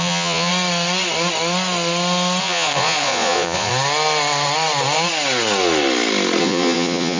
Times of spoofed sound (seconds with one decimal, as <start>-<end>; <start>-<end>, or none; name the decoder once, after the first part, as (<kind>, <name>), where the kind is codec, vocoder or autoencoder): 0.0-0.5 (vocoder, Vocos); 2.4-3.7; 6.4-7.2